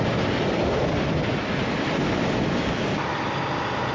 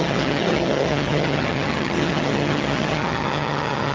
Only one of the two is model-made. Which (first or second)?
second